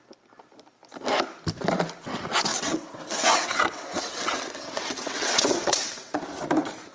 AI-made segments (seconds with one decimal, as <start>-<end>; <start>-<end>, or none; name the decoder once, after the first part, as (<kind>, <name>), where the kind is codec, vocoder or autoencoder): 2.5-6.2 (vocoder, WaveNeXt)